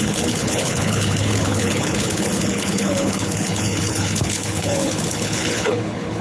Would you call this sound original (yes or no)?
no